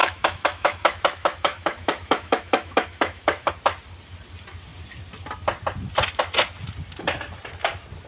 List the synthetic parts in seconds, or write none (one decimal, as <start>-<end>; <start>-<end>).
0.0-3.5